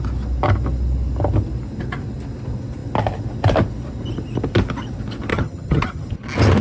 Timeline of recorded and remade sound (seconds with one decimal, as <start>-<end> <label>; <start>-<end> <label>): 0.0-5.3 recorded; 5.3-6.1 remade; 6.1-6.6 recorded